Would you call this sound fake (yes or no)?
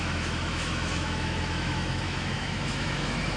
yes